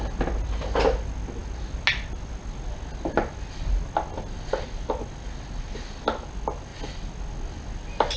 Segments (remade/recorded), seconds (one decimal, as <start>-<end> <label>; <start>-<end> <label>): 0.0-8.2 recorded